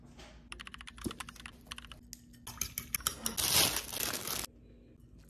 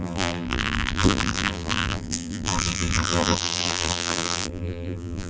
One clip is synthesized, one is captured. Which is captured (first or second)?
first